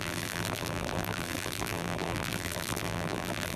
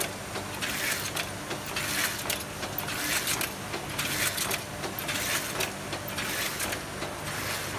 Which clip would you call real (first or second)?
second